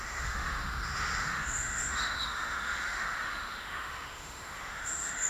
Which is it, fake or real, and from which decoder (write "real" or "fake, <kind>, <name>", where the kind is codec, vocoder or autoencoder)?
fake, autoencoder, DAC-VAE